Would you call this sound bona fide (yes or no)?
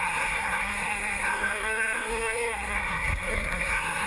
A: no